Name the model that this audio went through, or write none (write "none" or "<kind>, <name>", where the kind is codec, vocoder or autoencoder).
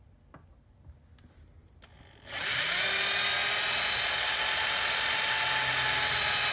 none